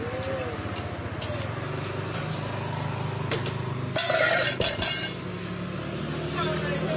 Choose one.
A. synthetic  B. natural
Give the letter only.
B